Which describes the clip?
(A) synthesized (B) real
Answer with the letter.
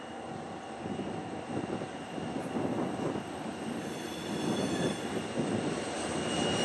B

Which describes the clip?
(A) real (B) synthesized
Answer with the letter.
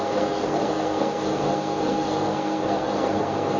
B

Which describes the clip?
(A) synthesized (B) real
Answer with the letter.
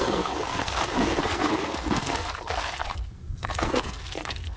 A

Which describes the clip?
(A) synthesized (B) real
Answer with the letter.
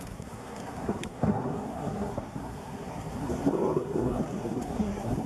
A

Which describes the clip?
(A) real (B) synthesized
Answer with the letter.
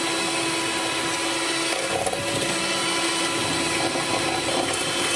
A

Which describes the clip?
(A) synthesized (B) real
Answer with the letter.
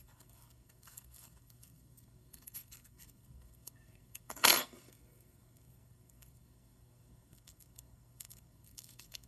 A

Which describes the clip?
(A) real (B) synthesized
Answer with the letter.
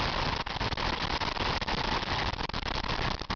A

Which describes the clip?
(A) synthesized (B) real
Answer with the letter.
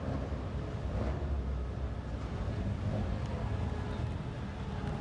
B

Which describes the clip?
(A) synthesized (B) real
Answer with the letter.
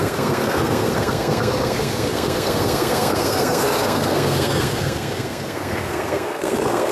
A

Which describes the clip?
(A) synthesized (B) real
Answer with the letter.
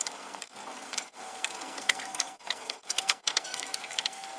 A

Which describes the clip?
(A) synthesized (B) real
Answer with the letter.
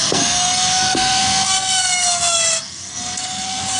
A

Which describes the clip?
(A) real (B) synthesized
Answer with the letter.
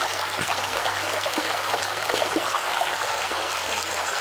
B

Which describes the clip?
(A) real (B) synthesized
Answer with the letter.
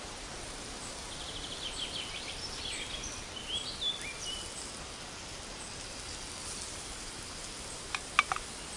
A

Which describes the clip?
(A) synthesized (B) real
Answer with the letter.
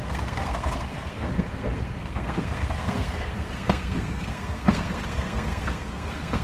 A